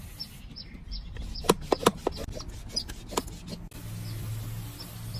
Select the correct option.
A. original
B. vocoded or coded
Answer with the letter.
A